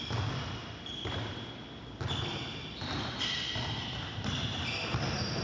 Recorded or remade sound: recorded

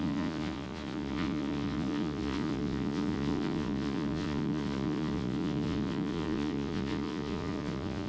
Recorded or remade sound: remade